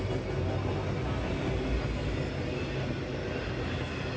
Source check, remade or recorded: recorded